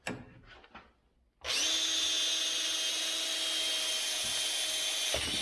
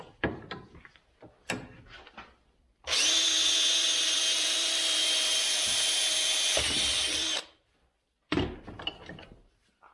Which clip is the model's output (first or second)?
second